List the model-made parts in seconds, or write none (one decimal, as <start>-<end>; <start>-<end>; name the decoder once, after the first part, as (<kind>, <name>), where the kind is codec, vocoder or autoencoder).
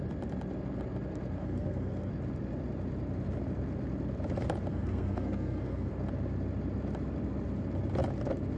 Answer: 1.4-2.1 (codec, SNAC); 4.7-5.9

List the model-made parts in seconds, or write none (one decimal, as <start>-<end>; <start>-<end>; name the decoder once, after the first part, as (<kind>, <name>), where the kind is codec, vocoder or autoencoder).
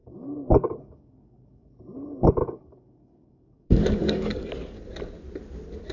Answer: 0.0-1.7 (codec, DAC); 2.4-4.5